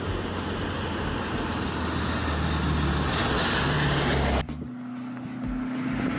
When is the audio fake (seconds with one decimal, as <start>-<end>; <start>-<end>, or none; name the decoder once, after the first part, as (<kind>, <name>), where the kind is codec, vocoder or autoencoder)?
none